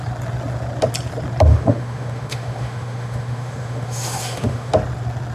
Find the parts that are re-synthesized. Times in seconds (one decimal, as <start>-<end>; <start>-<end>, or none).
1.5-4.7